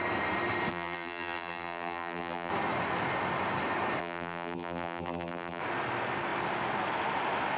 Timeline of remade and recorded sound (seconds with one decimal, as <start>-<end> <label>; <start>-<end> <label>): 0.0-0.7 recorded; 0.7-2.5 remade; 2.5-4.0 recorded; 4.0-5.6 remade; 5.6-7.6 recorded